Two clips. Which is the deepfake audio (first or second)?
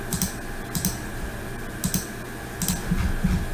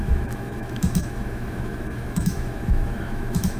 second